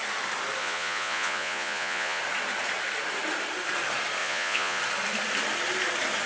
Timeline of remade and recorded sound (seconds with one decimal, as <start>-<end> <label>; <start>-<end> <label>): 0.0-0.6 recorded; 0.6-2.2 remade; 2.2-4.2 recorded; 4.2-4.8 remade; 4.8-6.3 recorded